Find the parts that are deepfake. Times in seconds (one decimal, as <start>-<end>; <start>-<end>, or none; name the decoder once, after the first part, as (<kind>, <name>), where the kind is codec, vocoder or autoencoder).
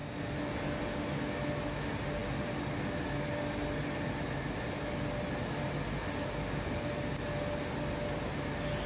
none